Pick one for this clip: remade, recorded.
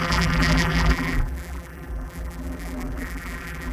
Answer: remade